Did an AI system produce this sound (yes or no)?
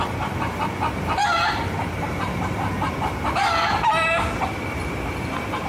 no